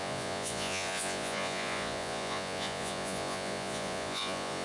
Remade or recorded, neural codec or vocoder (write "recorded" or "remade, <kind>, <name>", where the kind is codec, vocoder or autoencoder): remade, vocoder, Vocos